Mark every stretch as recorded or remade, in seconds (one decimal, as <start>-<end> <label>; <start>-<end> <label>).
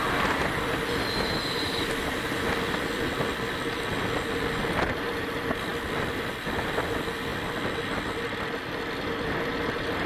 0.0-10.1 recorded